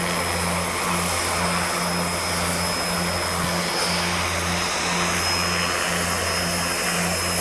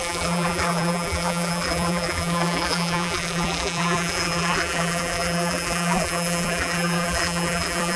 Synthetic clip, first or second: second